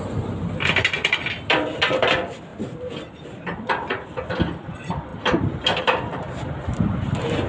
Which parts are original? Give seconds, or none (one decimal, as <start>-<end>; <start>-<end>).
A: 2.5-3.1